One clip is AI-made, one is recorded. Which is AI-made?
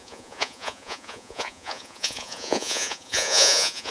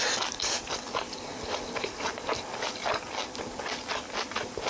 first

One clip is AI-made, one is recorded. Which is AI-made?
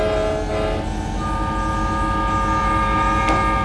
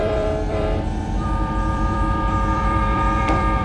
second